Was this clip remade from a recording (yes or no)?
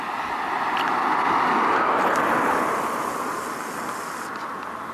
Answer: no